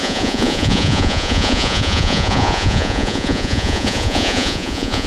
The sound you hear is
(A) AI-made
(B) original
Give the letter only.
A